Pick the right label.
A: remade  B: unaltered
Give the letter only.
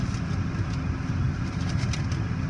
B